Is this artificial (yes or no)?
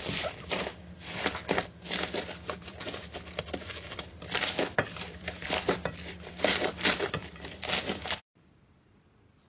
yes